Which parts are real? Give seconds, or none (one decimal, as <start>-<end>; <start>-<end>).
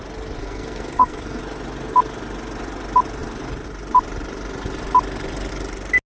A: 0.0-0.4; 1.4-6.2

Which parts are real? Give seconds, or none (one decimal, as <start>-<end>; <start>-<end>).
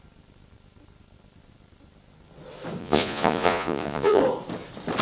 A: 0.0-2.8; 4.2-5.0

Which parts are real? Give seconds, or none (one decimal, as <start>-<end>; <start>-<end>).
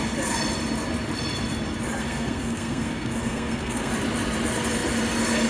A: 0.0-2.0; 3.9-5.5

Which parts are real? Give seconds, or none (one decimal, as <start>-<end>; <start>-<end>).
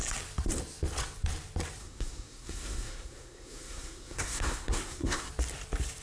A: 0.0-1.8; 5.3-6.0